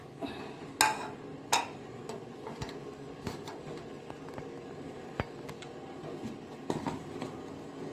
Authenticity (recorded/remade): recorded